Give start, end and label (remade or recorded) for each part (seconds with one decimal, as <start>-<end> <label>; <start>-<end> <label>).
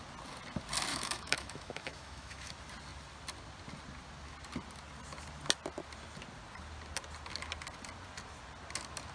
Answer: 0.0-0.9 recorded; 0.9-2.5 remade; 2.5-9.1 recorded